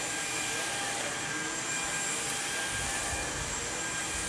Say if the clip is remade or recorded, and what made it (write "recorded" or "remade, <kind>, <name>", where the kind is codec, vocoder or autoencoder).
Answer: recorded